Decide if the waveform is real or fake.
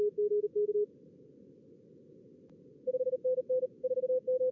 real